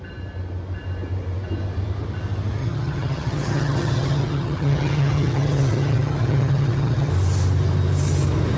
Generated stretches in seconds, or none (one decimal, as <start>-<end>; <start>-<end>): 2.6-7.1